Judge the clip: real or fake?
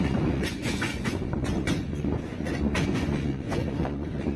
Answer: fake